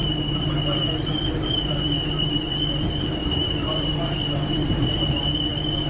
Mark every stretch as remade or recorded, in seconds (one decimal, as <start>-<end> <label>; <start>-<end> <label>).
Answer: 0.0-2.5 remade; 2.5-3.2 recorded; 3.2-5.0 remade; 5.0-5.9 recorded